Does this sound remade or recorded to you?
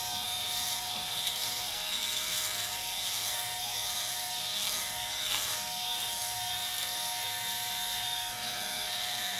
remade